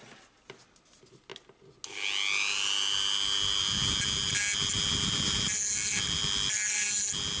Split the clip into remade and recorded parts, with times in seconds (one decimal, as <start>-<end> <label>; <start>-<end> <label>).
0.0-7.4 recorded